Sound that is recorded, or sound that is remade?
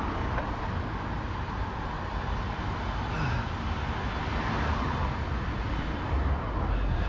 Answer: recorded